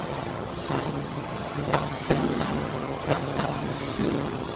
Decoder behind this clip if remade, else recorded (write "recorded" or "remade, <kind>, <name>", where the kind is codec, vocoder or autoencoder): remade, vocoder, HiFi-GAN